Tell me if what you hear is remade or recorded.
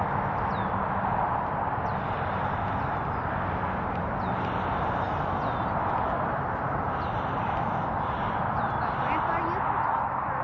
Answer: recorded